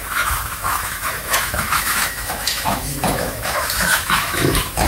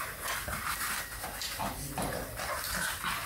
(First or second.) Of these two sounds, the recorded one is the second